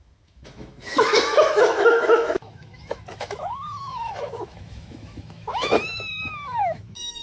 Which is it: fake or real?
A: fake